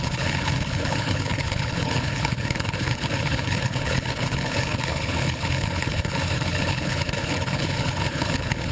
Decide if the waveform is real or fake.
fake